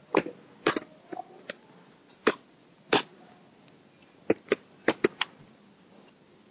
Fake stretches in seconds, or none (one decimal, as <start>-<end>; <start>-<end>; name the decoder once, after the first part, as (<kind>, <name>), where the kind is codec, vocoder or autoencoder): none